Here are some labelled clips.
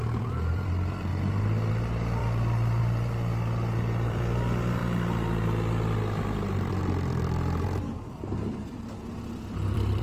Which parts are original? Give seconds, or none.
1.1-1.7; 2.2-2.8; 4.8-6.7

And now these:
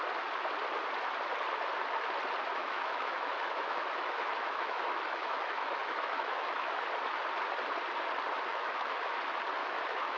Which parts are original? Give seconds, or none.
0.0-2.6; 6.7-8.5; 9.1-9.6

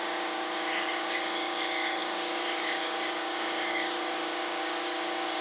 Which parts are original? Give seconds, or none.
none